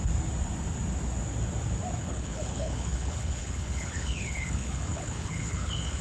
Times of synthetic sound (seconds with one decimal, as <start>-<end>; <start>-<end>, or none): 2.0-6.0